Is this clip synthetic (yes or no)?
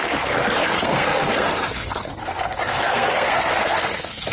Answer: yes